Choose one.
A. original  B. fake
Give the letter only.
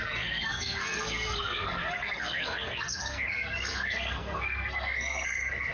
B